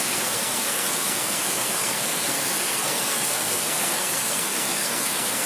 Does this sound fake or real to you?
fake